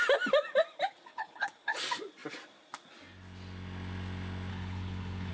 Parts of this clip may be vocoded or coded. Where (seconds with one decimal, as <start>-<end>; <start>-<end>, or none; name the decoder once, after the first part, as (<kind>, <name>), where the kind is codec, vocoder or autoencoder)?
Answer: 1.1-1.8 (codec, HILCodec); 4.5-5.3